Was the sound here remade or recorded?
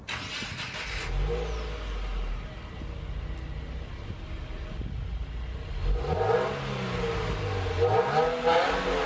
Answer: recorded